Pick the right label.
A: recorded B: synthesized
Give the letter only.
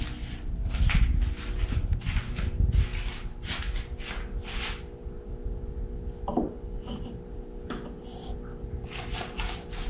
A